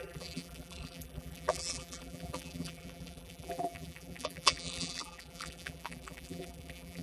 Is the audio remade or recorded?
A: remade